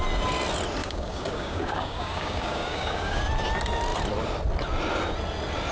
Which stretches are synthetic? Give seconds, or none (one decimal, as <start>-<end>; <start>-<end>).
0.8-3.2